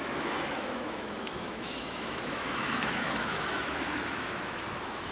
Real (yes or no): no